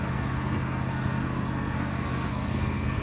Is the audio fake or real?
fake